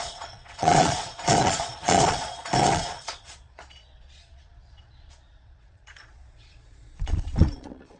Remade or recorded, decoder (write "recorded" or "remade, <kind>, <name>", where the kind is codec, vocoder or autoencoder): remade, vocoder, Vocos